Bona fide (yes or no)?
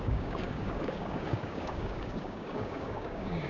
no